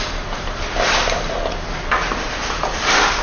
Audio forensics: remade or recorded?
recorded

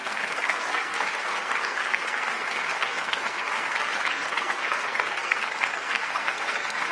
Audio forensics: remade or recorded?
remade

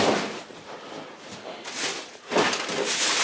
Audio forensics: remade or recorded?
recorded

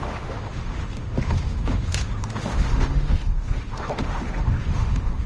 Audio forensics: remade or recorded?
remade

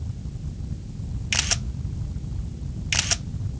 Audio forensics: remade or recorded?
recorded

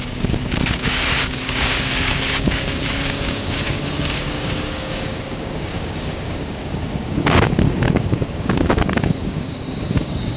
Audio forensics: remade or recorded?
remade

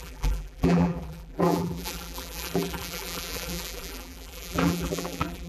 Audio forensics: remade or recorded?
remade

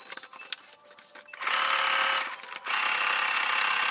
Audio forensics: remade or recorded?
recorded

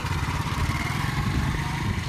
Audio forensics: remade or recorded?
remade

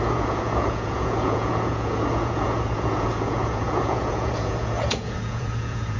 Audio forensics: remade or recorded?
remade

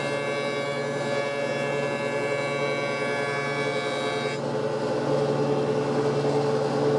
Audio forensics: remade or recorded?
recorded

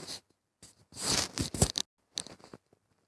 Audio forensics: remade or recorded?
recorded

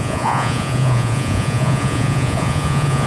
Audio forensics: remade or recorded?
remade